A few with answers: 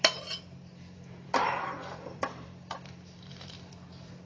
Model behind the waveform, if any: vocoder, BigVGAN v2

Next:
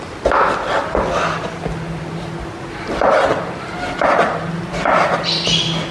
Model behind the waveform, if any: none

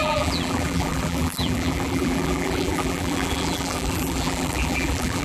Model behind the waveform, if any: vocoder, BigVGAN v2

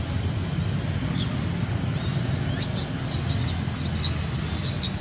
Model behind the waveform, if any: none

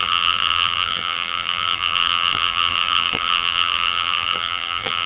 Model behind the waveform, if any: vocoder, BigVGAN v2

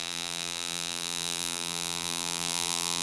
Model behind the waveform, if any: vocoder, BigVGAN v2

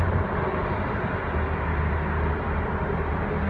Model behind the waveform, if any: none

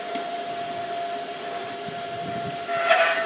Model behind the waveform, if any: none